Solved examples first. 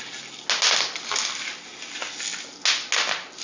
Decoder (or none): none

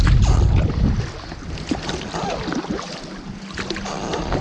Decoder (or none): none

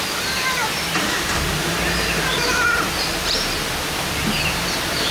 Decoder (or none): none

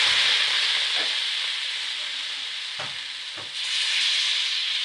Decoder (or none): none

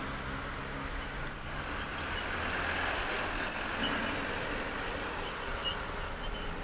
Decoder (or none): none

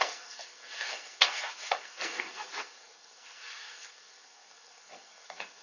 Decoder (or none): codec, SNAC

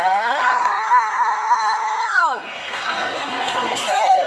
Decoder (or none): codec, SNAC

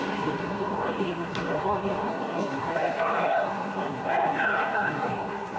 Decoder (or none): codec, SNAC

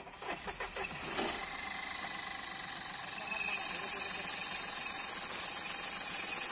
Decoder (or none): none